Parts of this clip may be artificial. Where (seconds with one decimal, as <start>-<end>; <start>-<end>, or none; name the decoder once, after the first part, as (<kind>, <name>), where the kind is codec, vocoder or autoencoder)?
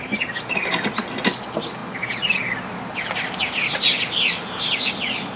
none